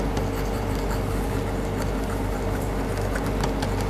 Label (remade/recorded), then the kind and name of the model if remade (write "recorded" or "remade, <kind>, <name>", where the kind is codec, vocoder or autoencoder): recorded